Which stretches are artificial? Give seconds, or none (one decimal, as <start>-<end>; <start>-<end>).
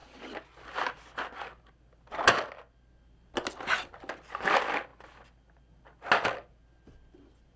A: none